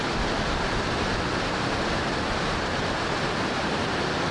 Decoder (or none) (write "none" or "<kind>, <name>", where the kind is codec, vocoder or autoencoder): none